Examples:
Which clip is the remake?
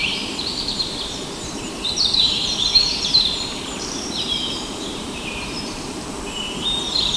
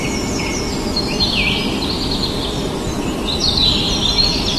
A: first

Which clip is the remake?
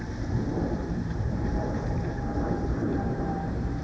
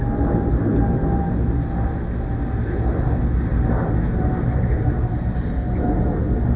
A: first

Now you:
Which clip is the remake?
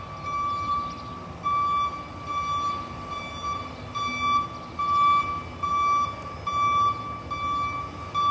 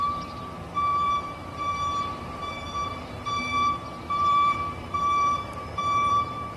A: second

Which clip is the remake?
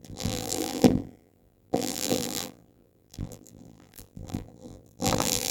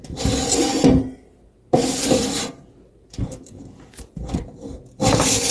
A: first